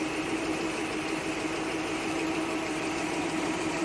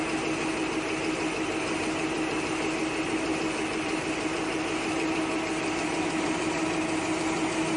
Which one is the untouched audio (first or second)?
second